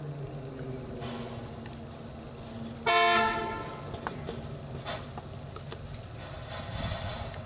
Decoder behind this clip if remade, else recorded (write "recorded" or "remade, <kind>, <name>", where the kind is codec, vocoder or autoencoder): recorded